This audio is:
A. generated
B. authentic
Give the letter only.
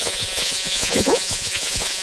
A